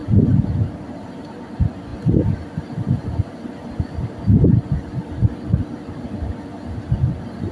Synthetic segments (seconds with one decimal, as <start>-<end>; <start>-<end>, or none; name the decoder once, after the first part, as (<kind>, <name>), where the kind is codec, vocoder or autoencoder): 0.0-1.3 (vocoder, BigVGAN v2); 3.6-4.5